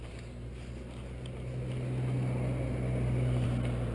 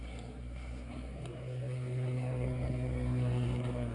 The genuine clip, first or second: first